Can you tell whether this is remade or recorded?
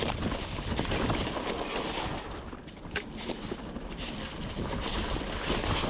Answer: recorded